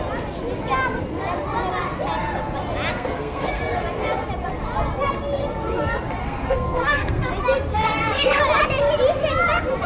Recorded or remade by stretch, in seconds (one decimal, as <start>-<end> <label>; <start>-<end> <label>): 0.0-2.9 recorded; 2.9-3.6 remade; 3.6-6.2 recorded; 6.2-7.3 remade; 7.3-7.7 recorded; 7.7-8.4 remade; 8.4-9.9 recorded